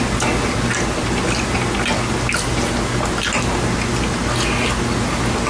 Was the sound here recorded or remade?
recorded